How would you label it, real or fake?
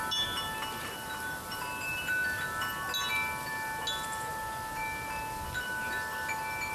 real